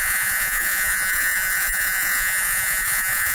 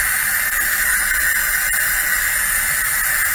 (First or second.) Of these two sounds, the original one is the second